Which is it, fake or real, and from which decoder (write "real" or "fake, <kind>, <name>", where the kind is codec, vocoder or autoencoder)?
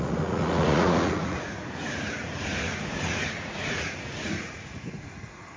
fake, vocoder, Vocos